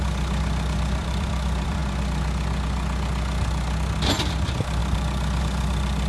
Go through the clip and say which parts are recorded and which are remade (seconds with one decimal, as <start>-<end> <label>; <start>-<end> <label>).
0.0-1.8 remade; 1.8-4.2 recorded; 4.2-6.1 remade